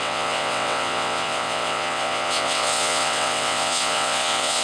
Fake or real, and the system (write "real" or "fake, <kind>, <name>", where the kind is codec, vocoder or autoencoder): fake, vocoder, WaveNeXt